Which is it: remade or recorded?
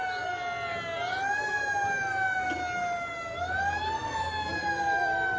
recorded